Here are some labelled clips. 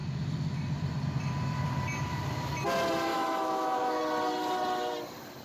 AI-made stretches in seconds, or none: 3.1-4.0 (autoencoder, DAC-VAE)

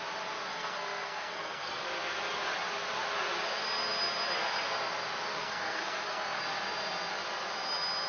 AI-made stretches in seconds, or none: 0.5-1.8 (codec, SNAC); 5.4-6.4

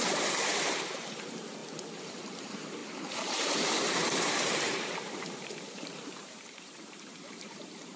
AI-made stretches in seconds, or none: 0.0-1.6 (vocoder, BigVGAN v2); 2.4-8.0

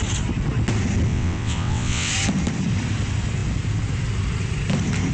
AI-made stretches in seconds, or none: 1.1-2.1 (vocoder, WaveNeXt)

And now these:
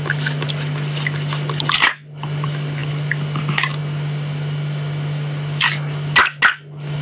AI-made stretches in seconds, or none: none